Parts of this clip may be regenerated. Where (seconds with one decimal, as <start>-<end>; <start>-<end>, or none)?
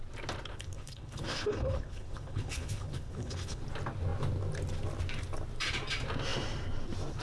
0.5-3.6